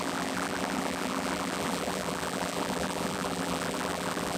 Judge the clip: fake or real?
fake